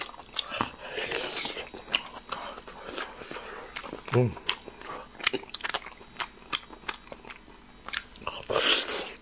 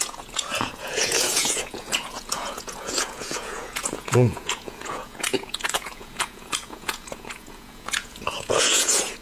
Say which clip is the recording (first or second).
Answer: first